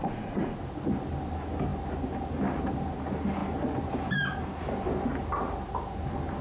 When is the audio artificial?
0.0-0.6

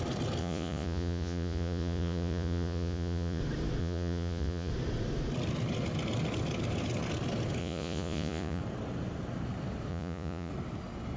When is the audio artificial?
0.4-3.4; 3.8-4.7; 7.6-8.6; 9.9-10.5